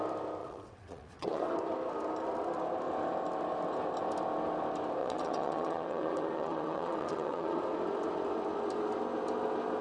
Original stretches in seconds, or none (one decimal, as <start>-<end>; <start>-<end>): 0.0-0.4; 1.6-5.0; 7.6-9.8